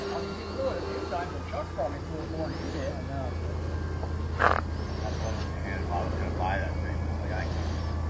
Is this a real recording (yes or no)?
yes